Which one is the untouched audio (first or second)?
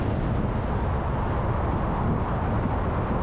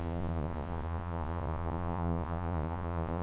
first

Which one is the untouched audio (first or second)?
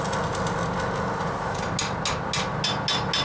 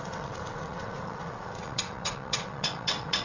first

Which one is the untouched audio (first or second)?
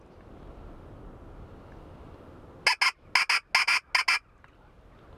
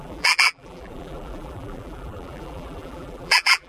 first